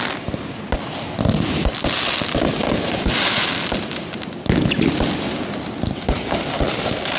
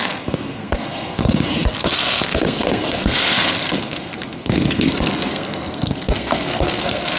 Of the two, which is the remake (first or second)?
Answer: second